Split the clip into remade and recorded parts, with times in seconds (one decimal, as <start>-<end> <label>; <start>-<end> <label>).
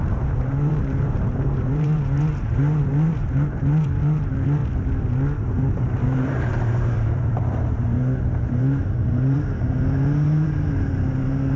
0.0-4.6 remade; 4.6-5.4 recorded; 5.4-11.6 remade